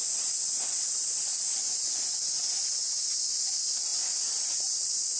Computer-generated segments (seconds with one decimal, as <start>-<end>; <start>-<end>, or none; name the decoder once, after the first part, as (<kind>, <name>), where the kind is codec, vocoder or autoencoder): none